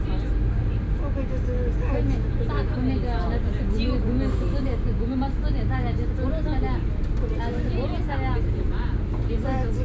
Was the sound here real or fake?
real